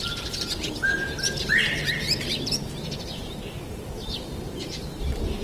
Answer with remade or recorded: remade